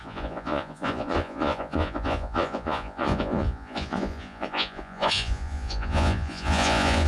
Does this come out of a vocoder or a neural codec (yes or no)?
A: yes